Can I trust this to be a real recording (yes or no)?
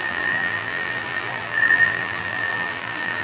no